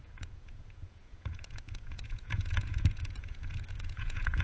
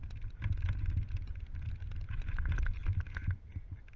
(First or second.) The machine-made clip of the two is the first